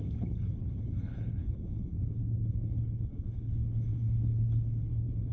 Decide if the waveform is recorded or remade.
remade